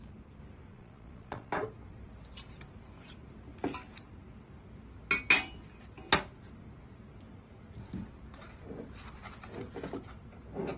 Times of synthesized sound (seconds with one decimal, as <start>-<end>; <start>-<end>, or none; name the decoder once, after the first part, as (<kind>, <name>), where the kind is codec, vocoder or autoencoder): 0.7-1.5 (vocoder, Vocos)